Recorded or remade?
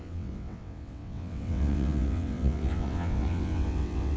remade